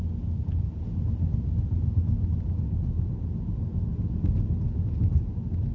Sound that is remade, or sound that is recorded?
recorded